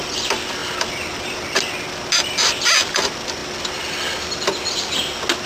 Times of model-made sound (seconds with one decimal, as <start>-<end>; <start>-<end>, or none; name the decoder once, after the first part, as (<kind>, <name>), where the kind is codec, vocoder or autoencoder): none